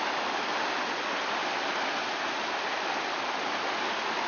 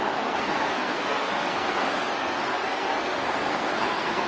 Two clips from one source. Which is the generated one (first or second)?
second